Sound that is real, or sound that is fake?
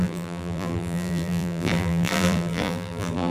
fake